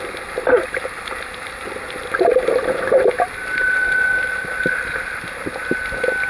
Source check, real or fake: real